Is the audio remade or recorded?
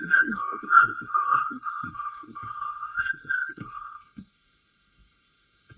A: remade